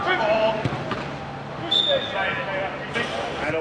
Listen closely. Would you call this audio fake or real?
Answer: real